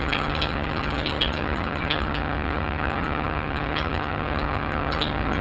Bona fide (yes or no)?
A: no